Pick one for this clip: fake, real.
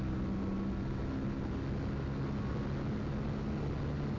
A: real